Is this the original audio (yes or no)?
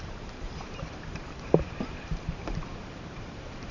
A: no